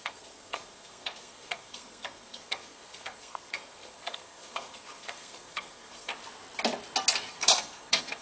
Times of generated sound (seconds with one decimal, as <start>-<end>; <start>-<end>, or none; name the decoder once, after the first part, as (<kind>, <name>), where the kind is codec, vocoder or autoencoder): 0.0-6.1 (codec, SNAC); 7.3-8.2